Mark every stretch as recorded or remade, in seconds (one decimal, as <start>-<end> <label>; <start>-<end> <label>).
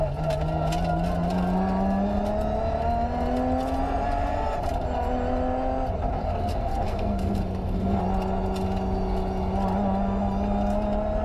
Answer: 0.0-6.2 recorded; 6.2-8.0 remade; 8.0-11.2 recorded